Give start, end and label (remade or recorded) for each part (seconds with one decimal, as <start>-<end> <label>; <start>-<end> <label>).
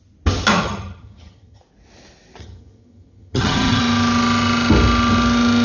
0.0-0.6 recorded; 0.6-1.6 remade; 1.6-2.4 recorded; 2.4-3.8 remade; 3.8-5.6 recorded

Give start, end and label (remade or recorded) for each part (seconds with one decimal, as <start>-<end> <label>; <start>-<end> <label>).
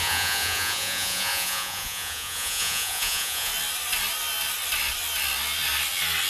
0.0-3.5 remade; 3.5-6.3 recorded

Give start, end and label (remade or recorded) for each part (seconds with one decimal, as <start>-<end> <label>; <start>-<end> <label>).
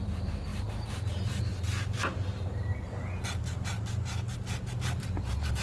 0.0-2.7 remade; 2.7-4.5 recorded; 4.5-5.6 remade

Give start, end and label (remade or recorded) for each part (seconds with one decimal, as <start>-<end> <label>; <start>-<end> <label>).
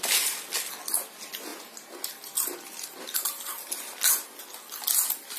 0.0-5.4 recorded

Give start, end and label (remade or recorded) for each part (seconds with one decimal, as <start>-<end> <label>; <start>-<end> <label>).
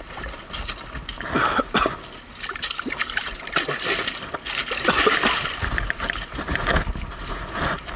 0.0-8.0 recorded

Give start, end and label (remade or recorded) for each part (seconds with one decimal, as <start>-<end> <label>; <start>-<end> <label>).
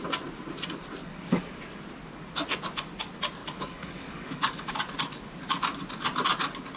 0.0-1.0 recorded; 1.0-1.6 remade; 1.6-3.4 recorded; 3.4-4.7 remade; 4.7-6.8 recorded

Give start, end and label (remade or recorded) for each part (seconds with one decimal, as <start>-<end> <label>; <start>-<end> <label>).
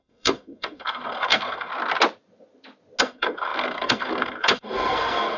0.0-1.7 remade; 1.7-3.0 recorded; 3.0-5.4 remade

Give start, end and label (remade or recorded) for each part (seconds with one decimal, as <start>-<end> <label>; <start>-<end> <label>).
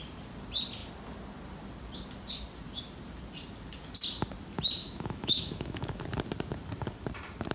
0.0-4.8 recorded; 4.8-6.0 remade; 6.0-7.5 recorded